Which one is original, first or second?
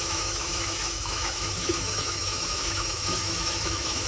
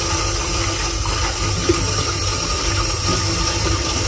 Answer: second